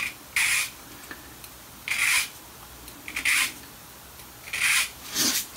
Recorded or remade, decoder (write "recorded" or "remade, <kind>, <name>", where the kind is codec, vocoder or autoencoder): recorded